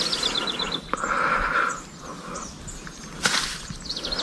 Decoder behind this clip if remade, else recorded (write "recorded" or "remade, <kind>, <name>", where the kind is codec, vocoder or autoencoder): remade, vocoder, BigVGAN v2